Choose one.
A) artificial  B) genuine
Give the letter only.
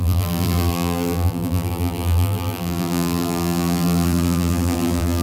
A